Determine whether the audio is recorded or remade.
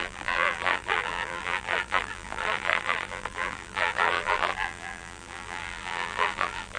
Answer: remade